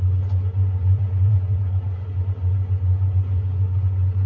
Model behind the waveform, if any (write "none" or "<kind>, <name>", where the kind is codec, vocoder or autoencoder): vocoder, Vocos